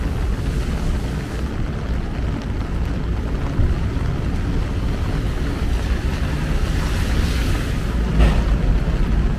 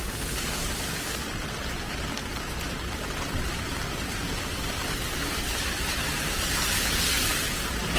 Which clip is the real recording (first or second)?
first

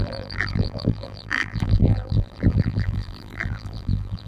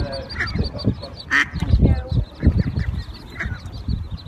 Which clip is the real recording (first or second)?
second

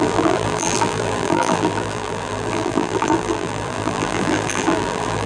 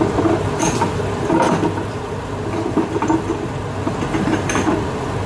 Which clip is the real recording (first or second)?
second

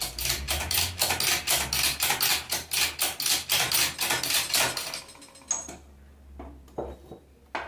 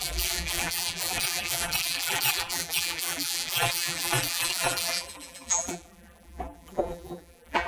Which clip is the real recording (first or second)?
first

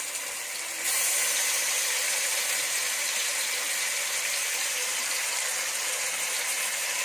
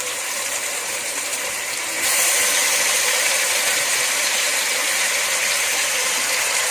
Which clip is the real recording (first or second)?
first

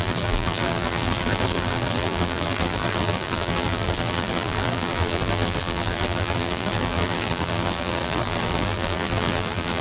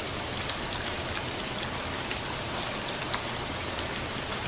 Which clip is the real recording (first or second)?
second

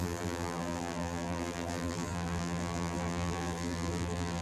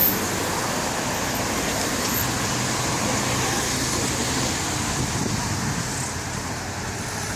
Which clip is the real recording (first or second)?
second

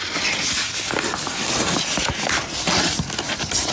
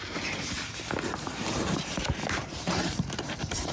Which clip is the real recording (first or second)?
first